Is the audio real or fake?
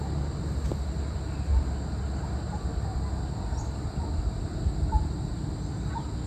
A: real